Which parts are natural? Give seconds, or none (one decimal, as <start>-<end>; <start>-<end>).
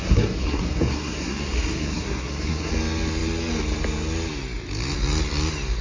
2.7-5.8